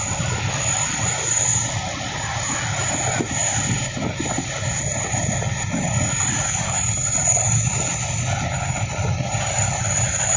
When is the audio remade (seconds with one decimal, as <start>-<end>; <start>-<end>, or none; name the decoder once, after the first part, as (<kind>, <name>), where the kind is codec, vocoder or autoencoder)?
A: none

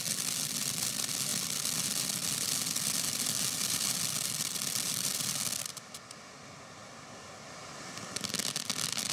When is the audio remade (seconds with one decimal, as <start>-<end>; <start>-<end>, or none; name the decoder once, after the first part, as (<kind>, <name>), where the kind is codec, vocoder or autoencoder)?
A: none

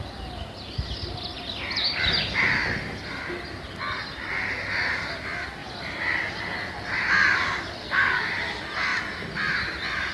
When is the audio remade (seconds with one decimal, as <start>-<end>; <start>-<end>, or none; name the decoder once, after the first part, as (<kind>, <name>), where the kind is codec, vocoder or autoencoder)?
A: 7.8-8.3 (codec, SNAC)

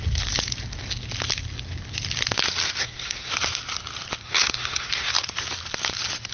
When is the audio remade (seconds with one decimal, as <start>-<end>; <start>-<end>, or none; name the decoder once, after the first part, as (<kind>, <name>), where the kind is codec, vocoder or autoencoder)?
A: 2.8-3.3 (codec, SNAC); 4.2-5.1

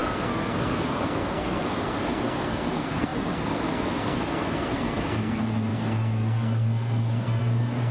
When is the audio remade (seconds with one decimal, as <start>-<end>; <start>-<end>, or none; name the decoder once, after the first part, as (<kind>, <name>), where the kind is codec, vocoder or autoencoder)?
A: 0.0-7.9 (codec, SNAC)

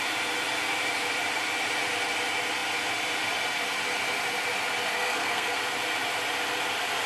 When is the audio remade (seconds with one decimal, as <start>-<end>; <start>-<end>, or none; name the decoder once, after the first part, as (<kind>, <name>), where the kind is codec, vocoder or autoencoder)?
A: 4.9-5.6 (codec, SNAC)

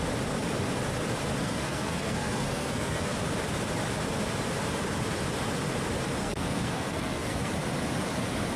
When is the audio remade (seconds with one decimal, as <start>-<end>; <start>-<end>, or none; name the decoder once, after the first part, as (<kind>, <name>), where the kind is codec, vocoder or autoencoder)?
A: 1.4-3.1 (codec, SNAC); 6.2-7.5

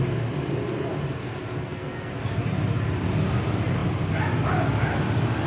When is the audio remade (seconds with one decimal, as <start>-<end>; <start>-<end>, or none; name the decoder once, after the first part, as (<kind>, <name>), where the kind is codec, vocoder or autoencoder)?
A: 1.2-2.1 (codec, SNAC)